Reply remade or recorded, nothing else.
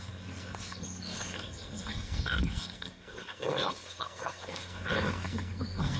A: remade